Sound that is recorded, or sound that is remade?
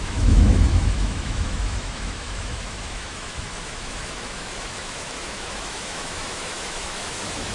remade